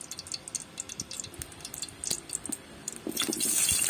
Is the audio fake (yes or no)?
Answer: no